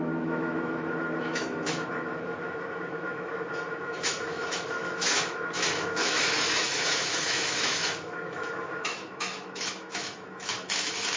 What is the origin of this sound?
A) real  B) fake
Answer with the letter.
B